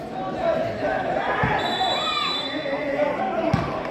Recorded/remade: recorded